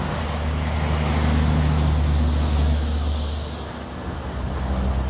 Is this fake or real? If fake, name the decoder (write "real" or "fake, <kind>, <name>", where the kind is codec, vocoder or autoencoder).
real